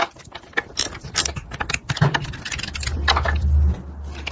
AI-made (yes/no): no